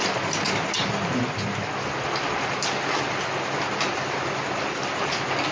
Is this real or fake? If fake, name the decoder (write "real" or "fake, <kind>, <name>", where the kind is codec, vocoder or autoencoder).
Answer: real